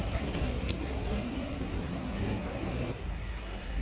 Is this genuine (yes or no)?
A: no